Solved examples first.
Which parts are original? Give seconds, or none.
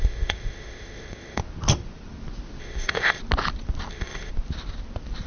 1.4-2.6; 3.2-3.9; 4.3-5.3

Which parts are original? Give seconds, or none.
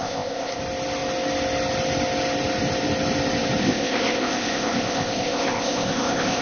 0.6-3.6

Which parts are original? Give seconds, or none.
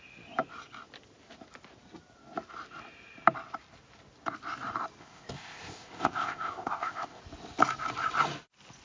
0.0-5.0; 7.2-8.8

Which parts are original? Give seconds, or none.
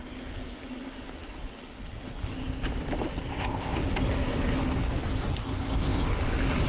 0.0-3.3; 3.8-5.4; 6.0-6.7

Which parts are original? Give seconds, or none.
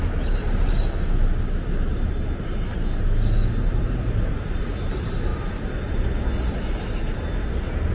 0.0-7.9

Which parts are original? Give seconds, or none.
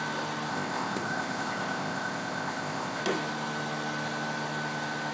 0.0-0.5; 3.0-5.1